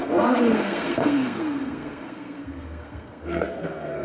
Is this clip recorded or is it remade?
remade